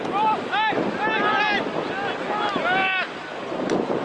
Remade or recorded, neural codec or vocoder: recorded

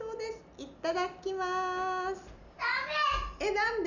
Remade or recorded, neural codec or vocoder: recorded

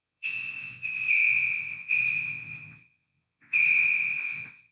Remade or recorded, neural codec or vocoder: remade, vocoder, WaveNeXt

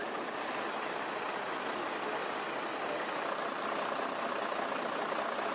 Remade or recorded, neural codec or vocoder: recorded